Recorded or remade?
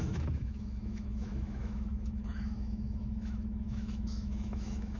remade